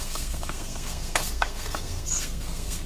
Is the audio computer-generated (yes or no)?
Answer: yes